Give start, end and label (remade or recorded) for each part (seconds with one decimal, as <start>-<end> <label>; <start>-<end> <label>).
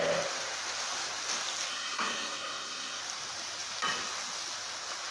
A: 0.0-1.7 recorded; 1.7-3.0 remade; 3.0-5.1 recorded